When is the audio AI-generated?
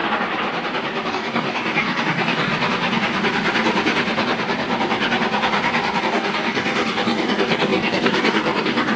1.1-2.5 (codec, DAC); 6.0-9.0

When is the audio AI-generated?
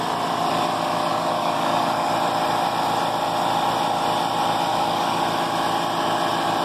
1.1-2.1 (codec, DAC); 4.7-5.2